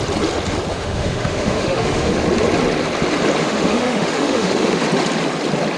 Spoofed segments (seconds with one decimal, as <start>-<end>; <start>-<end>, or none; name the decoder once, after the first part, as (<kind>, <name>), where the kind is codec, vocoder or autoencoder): 0.7-2.1 (autoencoder, DAC-VAE); 3.4-4.8